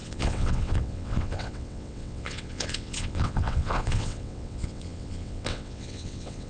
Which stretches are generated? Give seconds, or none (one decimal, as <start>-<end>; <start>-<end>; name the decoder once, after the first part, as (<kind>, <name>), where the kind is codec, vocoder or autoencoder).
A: 0.0-6.5 (vocoder, WaveNeXt)